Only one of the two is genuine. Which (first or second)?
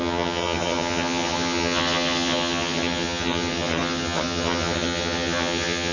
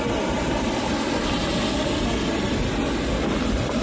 second